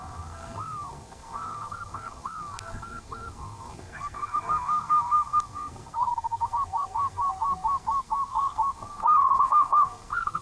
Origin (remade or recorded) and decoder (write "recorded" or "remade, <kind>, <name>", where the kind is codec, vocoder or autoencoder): remade, codec, SNAC